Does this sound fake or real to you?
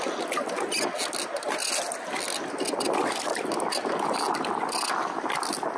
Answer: real